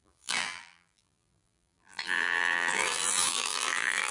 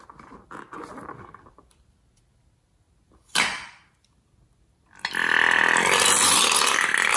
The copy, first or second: first